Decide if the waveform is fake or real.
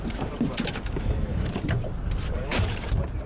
fake